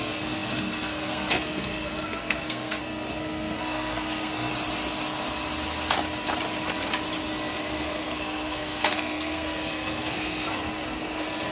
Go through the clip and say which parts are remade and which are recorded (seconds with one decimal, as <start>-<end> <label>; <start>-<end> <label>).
0.0-4.5 remade; 4.5-7.6 recorded; 7.6-11.5 remade